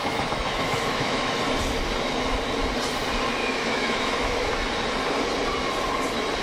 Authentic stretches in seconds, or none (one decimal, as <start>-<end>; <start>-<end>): 1.4-3.4; 4.5-6.4